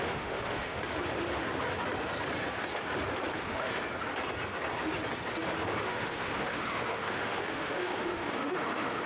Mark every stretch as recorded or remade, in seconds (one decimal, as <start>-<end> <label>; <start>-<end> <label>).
0.0-0.8 remade; 0.8-3.3 recorded; 3.3-3.7 remade; 3.7-5.8 recorded; 5.8-9.1 remade